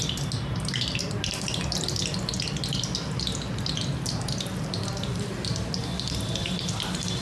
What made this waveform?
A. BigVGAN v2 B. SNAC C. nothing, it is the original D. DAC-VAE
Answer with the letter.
A